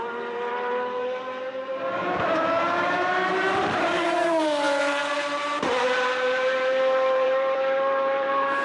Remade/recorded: remade